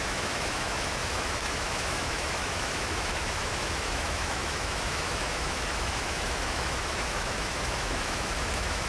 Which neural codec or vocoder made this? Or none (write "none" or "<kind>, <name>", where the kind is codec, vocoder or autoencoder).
autoencoder, DAC-VAE